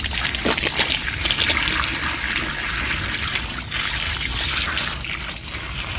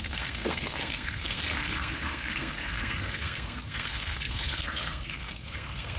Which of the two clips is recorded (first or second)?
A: first